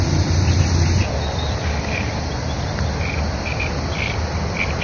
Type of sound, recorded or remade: recorded